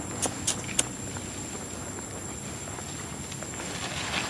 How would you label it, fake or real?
real